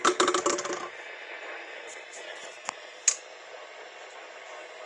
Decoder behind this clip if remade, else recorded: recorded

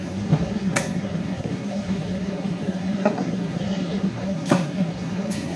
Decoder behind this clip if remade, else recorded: remade, codec, SNAC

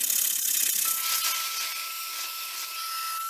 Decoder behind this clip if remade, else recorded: recorded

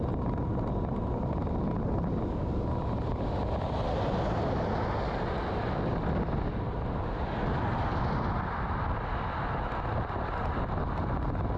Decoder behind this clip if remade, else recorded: recorded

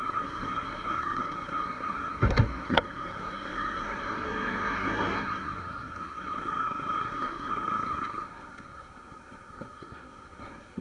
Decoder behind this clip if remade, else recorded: remade, codec, SNAC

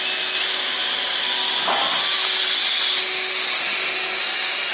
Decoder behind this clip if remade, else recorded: recorded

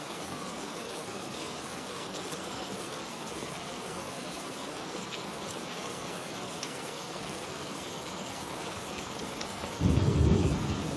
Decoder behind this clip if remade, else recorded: remade, codec, SNAC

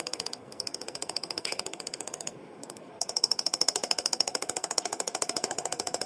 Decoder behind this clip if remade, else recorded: remade, codec, SNAC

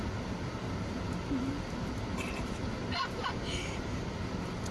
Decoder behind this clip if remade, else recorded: recorded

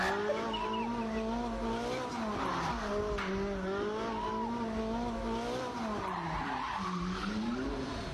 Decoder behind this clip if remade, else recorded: recorded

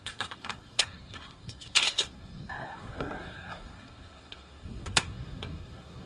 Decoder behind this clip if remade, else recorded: remade, codec, SNAC